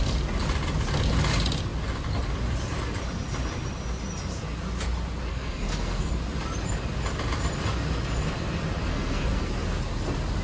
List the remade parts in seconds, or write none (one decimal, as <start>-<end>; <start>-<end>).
5.3-6.1; 8.9-9.5